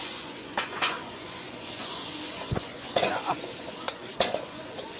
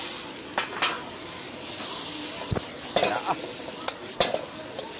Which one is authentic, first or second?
second